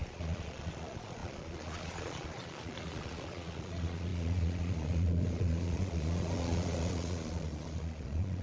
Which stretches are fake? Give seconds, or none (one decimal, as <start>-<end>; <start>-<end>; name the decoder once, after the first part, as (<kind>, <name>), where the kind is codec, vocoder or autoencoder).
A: 0.0-8.4 (vocoder, Vocos)